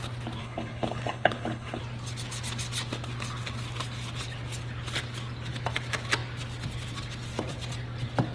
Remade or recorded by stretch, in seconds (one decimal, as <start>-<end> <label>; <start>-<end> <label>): 0.0-0.4 recorded; 0.4-1.8 remade; 1.8-8.3 recorded